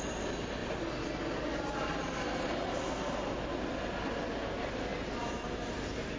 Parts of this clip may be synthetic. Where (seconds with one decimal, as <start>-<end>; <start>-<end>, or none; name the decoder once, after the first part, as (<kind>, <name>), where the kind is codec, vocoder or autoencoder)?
none